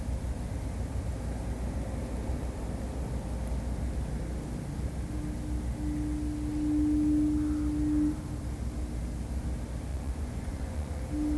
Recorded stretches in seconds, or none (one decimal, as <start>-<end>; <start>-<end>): 0.0-9.9; 11.0-11.4